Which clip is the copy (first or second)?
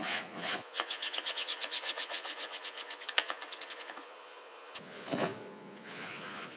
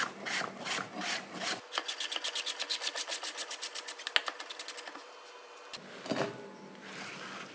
first